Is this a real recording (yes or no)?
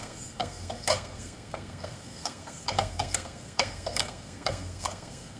no